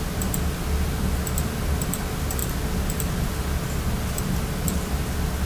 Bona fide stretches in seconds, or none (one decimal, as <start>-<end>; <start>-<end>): 0.0-5.4